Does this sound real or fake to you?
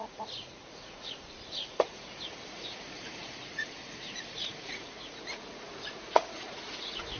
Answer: fake